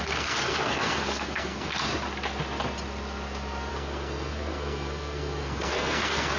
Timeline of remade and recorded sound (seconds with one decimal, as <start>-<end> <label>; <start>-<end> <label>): 0.0-1.9 remade; 1.9-3.7 recorded; 3.7-6.4 remade